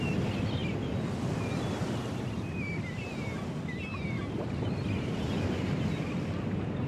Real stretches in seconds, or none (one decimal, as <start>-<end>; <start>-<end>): 0.0-3.9; 6.5-6.9